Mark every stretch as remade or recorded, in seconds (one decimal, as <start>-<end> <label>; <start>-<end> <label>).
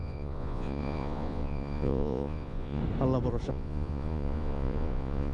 0.0-2.8 remade; 2.8-3.5 recorded; 3.5-5.3 remade